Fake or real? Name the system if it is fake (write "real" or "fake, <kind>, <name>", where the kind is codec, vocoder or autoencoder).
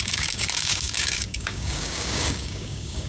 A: fake, codec, DAC